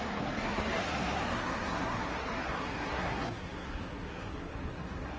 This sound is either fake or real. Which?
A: fake